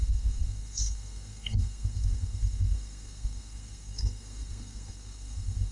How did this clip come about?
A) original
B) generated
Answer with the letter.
B